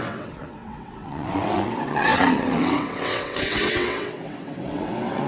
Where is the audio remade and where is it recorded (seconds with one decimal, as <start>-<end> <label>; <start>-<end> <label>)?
0.0-5.3 remade